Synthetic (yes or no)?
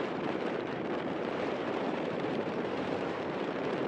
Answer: yes